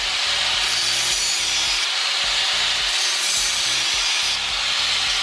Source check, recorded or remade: recorded